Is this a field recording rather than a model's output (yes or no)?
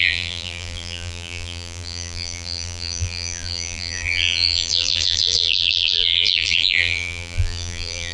no